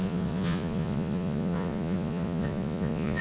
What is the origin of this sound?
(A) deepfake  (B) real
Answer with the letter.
A